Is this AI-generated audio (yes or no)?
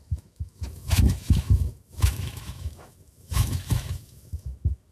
yes